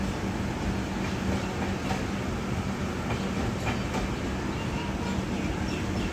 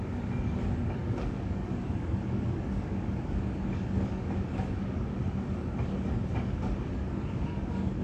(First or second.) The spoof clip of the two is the second